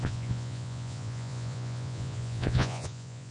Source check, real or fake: fake